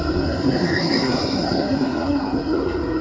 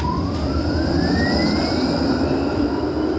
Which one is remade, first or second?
first